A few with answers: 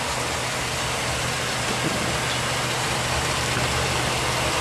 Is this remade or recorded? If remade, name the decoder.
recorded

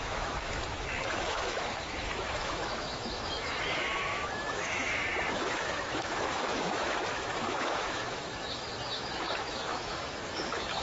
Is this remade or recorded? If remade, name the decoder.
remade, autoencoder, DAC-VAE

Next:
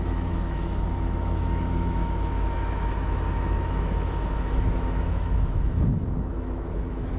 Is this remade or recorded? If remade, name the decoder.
remade, autoencoder, DAC-VAE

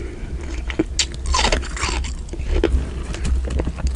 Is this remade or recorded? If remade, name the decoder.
recorded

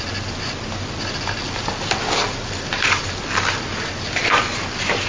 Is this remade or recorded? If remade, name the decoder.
recorded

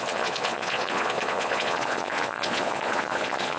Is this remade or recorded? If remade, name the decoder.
remade, vocoder, Vocos